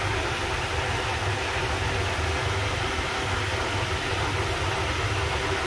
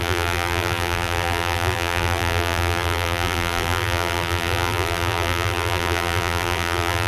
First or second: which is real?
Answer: first